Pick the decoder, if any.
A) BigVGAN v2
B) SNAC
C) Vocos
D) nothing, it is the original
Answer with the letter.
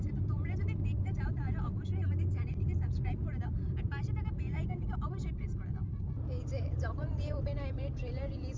D